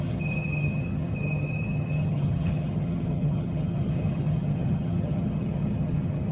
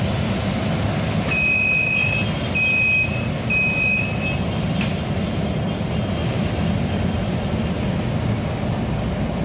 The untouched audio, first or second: second